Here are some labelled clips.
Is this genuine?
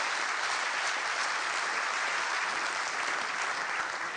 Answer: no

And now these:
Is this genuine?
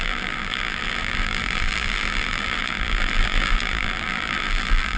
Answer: no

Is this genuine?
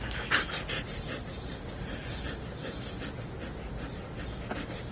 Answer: yes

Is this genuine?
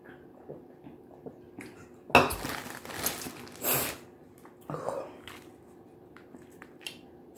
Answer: yes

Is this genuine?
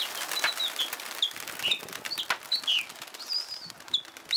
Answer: yes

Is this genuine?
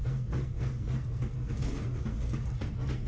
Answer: no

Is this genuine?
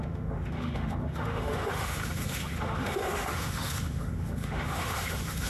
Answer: no